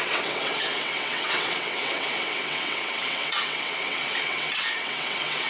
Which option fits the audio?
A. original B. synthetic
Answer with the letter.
B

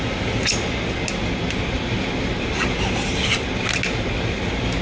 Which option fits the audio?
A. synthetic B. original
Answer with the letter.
B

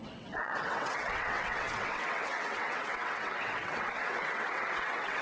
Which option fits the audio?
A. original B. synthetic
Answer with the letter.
B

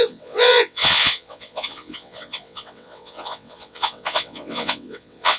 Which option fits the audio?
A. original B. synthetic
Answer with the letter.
B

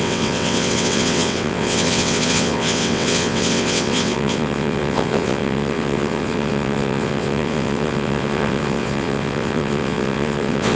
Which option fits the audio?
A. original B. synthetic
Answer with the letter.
B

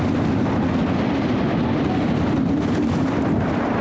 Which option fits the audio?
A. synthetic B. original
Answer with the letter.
B